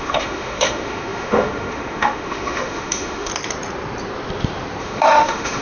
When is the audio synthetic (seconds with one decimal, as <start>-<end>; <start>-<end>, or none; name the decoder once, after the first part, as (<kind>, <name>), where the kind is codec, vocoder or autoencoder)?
0.0-3.3 (autoencoder, DAC-VAE); 4.8-5.6